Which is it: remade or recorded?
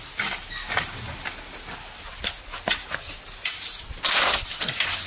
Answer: recorded